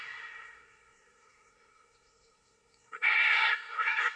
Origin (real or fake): fake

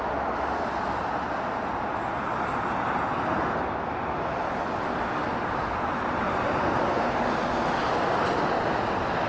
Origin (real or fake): real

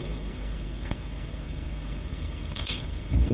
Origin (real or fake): fake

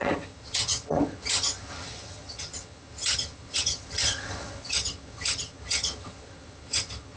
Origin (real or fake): fake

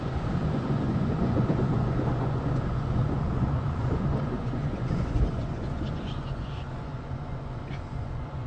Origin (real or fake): fake